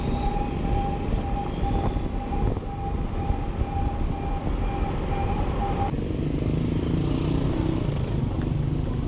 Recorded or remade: recorded